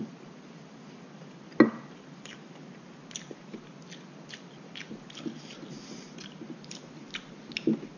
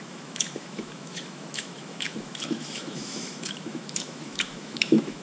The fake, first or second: second